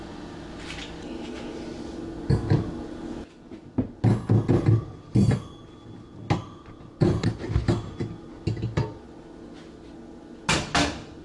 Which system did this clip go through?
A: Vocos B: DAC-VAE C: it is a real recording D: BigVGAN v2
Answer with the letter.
C